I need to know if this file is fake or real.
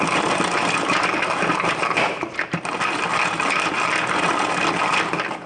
real